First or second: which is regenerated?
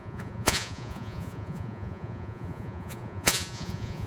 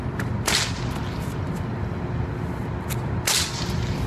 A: first